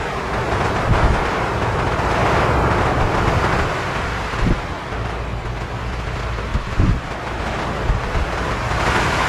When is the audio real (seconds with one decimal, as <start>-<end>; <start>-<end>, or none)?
0.0-9.3